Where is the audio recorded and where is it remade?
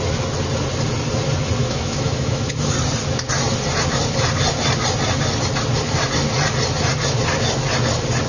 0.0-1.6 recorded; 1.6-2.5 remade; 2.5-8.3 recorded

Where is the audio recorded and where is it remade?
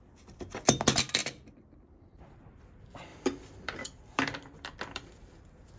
0.0-3.1 recorded; 3.1-5.1 remade; 5.1-5.8 recorded